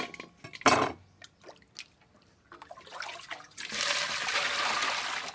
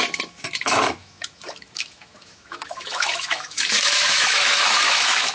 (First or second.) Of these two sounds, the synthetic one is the second